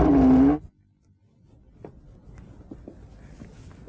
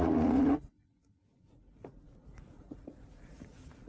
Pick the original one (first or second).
first